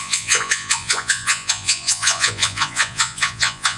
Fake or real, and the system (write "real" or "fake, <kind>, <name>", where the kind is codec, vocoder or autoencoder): fake, vocoder, Vocos